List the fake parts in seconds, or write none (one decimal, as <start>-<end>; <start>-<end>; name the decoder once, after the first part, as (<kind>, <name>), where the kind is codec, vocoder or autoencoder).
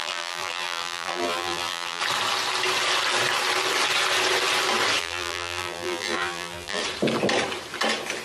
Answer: 0.0-2.0 (vocoder, BigVGAN v2); 5.0-6.8